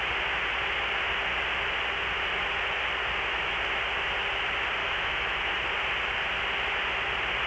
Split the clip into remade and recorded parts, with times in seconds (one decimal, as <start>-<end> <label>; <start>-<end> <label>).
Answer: 0.0-4.8 recorded; 4.8-5.5 remade; 5.5-7.5 recorded